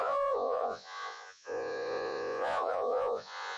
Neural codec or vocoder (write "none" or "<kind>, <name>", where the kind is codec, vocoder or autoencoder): vocoder, Vocos